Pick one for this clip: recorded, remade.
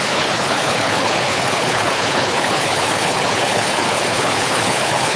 remade